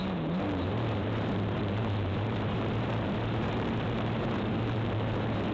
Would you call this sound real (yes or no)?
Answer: no